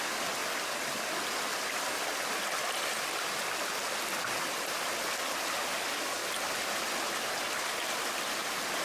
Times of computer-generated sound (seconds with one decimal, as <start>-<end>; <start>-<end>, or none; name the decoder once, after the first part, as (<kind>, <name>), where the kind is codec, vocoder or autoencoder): 0.0-0.4 (vocoder, BigVGAN v2); 4.4-6.2; 8.0-8.8